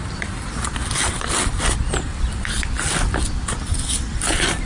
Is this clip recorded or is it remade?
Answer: remade